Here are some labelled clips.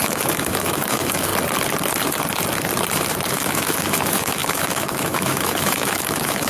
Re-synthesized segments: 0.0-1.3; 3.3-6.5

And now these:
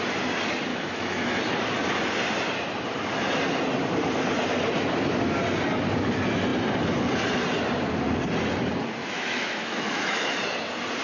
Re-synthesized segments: 0.7-1.4; 9.0-10.4